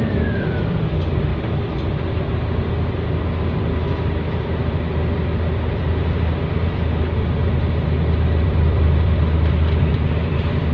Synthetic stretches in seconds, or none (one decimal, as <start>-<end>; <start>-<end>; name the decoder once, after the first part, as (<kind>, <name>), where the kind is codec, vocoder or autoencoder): 0.0-1.3 (vocoder, BigVGAN v2); 4.5-10.7